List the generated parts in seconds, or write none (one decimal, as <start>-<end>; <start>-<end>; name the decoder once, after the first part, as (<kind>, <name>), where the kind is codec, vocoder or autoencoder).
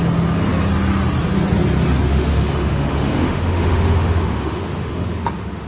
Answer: 2.1-5.7 (autoencoder, DAC-VAE)